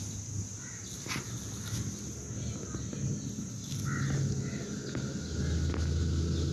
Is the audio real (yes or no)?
yes